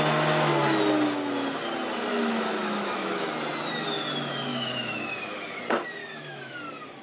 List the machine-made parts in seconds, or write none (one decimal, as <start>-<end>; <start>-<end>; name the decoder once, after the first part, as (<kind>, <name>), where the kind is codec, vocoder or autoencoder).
2.1-3.3 (autoencoder, DAC-VAE); 4.5-5.6; 6.0-6.6